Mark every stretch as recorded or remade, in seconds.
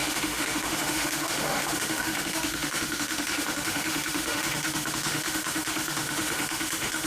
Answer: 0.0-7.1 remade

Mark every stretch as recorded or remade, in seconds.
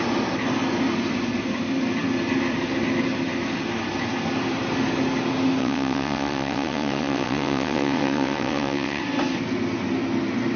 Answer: 0.0-5.6 recorded; 5.6-9.0 remade; 9.0-10.6 recorded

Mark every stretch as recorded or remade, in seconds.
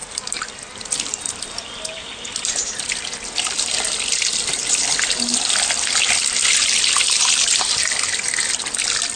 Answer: 0.0-9.2 recorded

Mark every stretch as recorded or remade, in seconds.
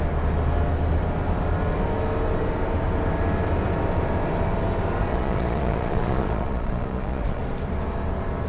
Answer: 0.0-5.1 recorded; 5.1-7.4 remade; 7.4-8.5 recorded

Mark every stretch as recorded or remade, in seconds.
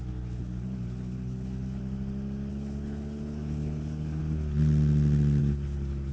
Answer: 0.0-1.8 remade; 1.8-2.5 recorded; 2.5-4.2 remade; 4.2-5.4 recorded; 5.4-6.1 remade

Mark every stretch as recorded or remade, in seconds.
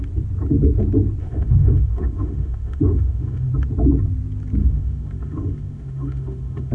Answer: 0.0-1.2 recorded; 1.2-3.5 remade; 3.5-4.6 recorded; 4.6-6.7 remade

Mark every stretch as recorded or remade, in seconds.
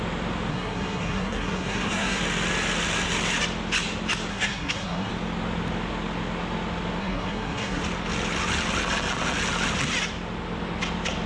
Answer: 0.0-0.5 recorded; 0.5-2.2 remade; 2.2-4.3 recorded; 4.3-5.1 remade; 5.1-7.0 recorded; 7.0-7.8 remade; 7.8-11.3 recorded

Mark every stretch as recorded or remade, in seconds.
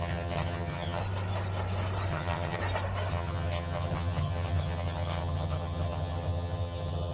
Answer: 0.0-1.0 remade; 1.0-2.1 recorded; 2.1-2.6 remade; 2.6-3.1 recorded; 3.1-7.1 remade